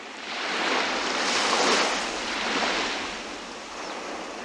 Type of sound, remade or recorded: recorded